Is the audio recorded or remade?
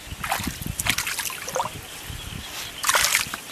recorded